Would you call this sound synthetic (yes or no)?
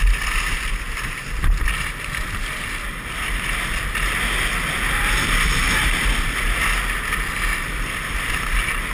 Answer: no